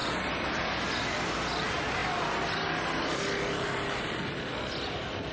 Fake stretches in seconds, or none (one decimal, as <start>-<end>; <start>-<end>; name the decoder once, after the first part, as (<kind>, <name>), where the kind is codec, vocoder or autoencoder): none